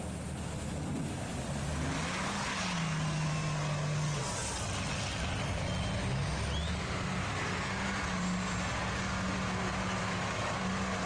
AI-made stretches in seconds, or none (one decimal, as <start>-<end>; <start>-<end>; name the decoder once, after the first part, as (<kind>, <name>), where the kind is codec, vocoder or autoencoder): 10.0-10.6 (autoencoder, DAC-VAE)